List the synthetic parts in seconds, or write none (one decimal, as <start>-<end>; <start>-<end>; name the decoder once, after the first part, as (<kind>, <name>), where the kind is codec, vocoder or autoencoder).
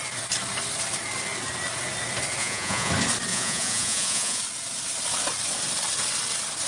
2.4-2.9 (vocoder, Vocos); 3.3-4.4